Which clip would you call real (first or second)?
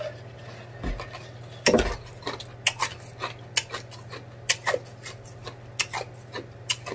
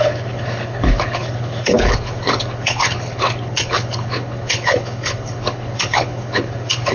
first